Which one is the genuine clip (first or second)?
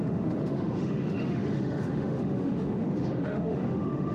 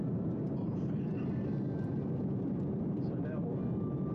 second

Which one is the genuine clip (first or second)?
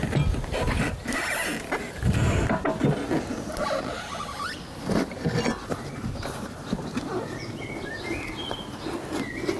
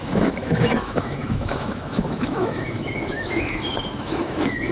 first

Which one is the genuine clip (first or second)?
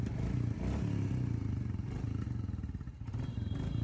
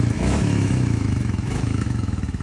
first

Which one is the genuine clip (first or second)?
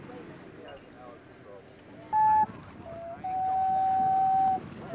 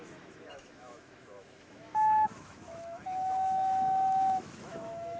first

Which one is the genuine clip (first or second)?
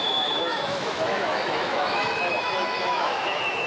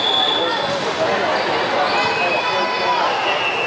second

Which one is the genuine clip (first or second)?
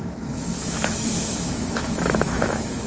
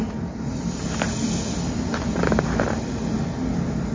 second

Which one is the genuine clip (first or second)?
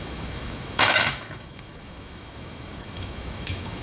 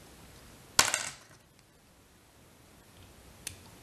second